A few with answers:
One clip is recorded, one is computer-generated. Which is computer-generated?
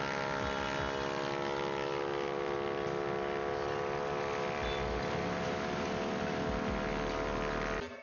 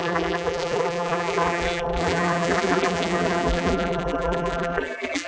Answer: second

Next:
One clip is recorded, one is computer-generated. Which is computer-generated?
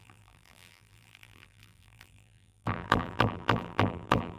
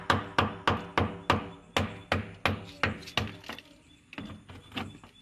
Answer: first